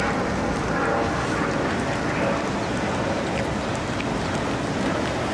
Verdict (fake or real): real